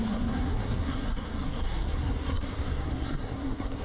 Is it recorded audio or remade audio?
remade